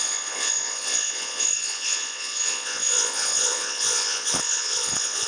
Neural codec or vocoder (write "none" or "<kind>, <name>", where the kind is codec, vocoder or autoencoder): vocoder, Vocos